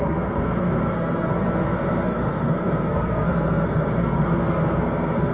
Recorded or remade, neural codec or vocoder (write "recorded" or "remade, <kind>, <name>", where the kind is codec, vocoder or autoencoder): remade, codec, SNAC